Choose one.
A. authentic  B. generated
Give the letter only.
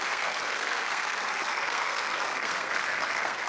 B